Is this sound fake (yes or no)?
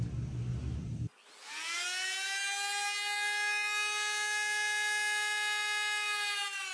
no